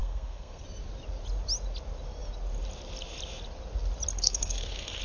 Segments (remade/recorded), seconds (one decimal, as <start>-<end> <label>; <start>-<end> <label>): 0.0-0.6 remade; 0.6-4.1 recorded; 4.1-5.0 remade